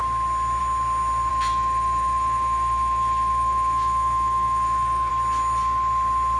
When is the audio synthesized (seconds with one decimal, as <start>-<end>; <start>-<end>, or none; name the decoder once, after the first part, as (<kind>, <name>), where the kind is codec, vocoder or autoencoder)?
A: 1.3-5.1 (autoencoder, DAC-VAE)